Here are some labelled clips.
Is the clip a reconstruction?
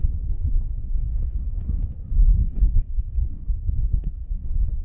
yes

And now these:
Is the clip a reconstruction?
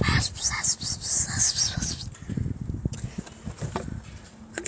no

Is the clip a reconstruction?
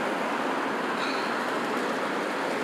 no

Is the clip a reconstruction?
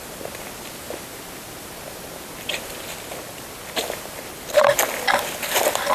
no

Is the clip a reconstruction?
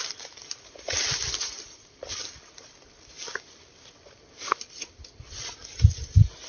no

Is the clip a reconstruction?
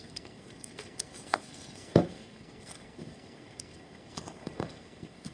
yes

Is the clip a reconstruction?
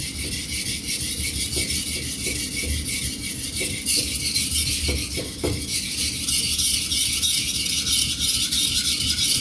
no